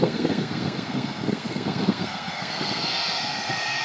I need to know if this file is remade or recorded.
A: remade